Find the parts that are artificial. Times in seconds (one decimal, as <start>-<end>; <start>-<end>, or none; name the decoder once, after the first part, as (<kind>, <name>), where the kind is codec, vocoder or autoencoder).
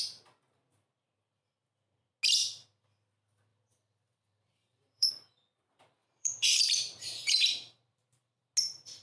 3.5-5.1 (vocoder, BigVGAN v2); 6.0-8.4